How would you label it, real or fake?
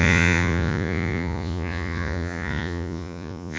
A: fake